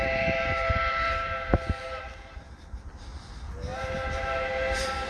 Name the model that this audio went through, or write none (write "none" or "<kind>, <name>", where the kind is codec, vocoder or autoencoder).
none